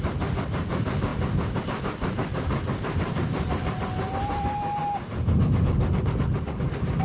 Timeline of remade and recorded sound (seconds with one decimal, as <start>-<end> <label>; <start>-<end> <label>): 0.0-4.8 remade; 4.8-7.0 recorded